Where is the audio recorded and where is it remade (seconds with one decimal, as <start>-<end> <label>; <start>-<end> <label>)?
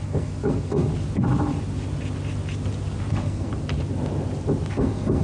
0.0-0.9 remade; 0.9-3.1 recorded; 3.1-3.5 remade; 3.5-4.7 recorded; 4.7-5.2 remade